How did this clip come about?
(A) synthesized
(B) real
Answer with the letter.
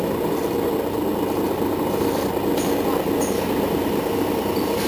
B